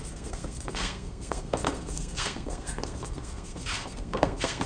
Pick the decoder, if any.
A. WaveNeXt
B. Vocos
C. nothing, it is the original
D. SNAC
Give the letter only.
D